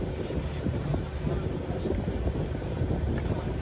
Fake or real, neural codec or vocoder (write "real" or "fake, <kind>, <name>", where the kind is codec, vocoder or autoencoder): real